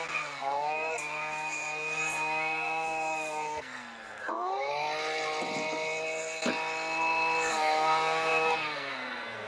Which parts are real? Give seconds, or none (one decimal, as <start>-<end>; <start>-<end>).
4.7-7.5